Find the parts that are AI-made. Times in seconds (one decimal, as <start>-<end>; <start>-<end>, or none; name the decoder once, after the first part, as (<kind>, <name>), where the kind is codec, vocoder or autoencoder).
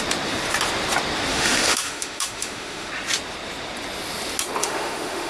1.3-2.9 (autoencoder, DAC-VAE); 4.6-5.3